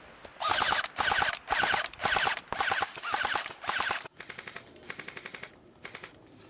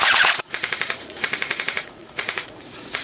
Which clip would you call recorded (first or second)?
first